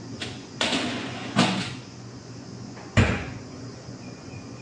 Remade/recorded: remade